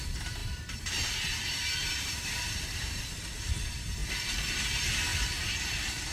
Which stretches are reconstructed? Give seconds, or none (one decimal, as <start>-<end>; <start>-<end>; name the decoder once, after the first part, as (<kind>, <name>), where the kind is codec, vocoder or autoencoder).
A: 0.4-3.0 (vocoder, BigVGAN v2); 5.1-6.1